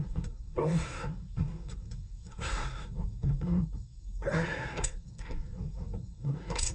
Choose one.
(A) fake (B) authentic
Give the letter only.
A